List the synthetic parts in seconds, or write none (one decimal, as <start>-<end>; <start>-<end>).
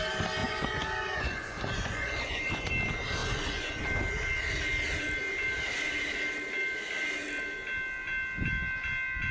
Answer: 0.4-2.7; 3.2-3.8